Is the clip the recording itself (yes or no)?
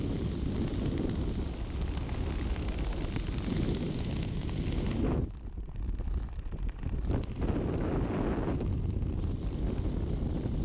yes